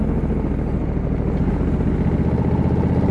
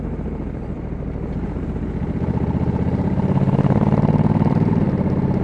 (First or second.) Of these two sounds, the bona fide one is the first